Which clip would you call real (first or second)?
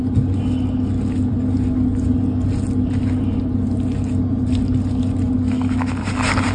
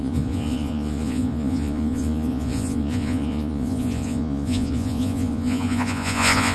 first